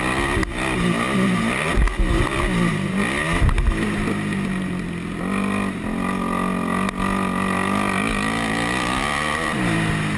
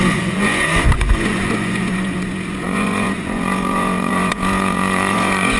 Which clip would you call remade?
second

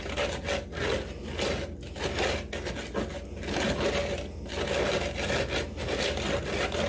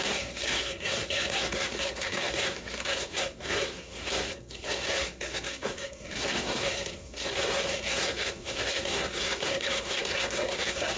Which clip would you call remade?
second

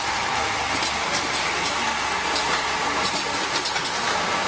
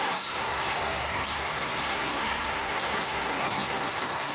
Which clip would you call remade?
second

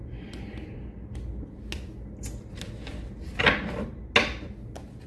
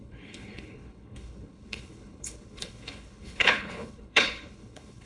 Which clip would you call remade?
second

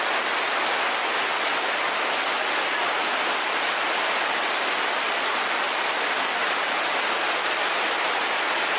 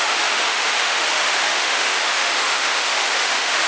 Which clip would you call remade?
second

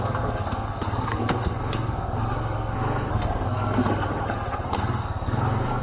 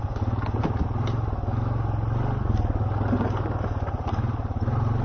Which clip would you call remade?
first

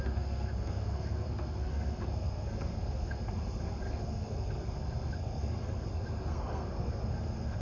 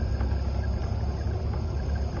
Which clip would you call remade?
first